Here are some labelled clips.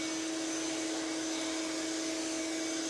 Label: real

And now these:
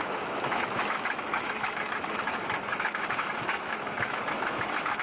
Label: fake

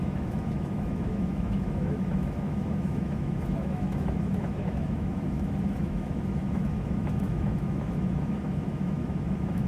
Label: fake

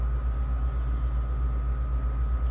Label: real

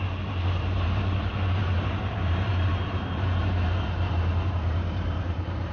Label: fake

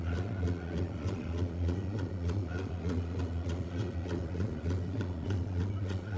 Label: fake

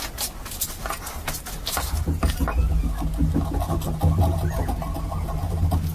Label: real